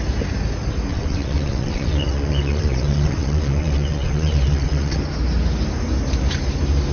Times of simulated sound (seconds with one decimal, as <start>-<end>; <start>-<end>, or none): 0.9-5.0